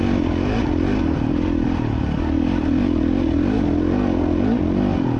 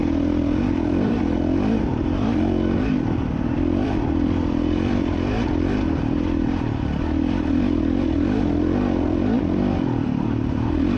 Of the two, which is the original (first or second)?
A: first